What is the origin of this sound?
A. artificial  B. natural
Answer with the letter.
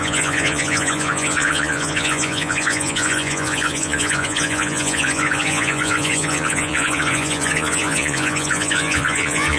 A